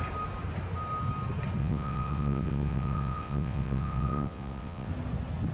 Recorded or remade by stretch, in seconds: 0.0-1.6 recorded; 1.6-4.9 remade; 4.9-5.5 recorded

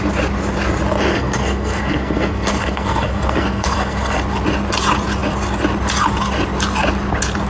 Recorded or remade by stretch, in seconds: 0.0-1.1 recorded; 1.1-4.2 remade; 4.2-7.5 recorded